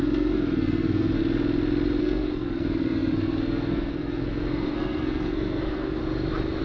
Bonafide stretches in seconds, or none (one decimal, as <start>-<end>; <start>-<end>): 1.2-2.0; 6.0-6.6